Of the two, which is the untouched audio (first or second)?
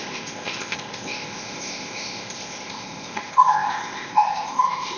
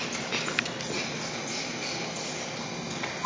second